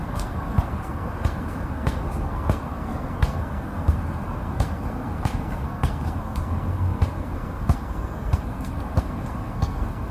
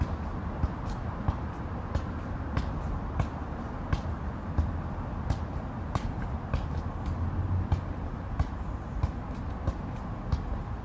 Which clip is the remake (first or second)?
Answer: first